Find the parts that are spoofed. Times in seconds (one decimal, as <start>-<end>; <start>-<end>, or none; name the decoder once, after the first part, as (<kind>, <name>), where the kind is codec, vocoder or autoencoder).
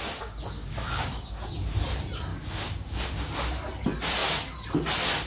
0.6-1.5 (codec, DAC); 2.3-3.3